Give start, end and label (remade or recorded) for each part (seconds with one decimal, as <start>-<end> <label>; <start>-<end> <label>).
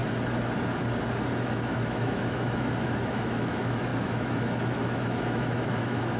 0.0-1.4 recorded; 1.4-6.2 remade